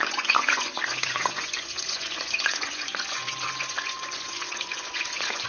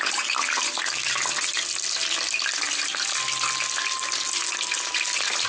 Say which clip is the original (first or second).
second